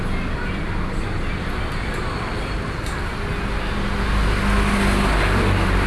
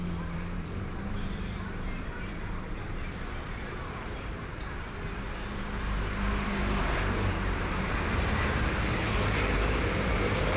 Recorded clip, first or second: first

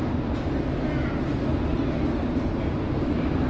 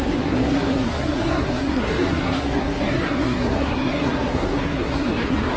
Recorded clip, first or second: first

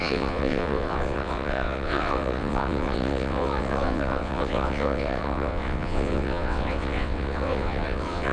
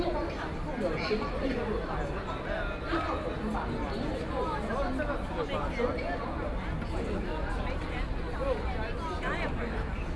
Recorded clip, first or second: second